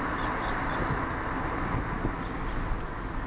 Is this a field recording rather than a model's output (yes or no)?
yes